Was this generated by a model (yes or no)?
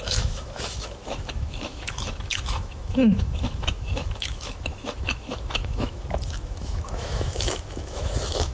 yes